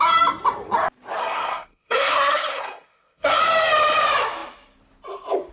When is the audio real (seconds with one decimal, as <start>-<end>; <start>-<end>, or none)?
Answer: 0.0-1.2; 3.4-5.5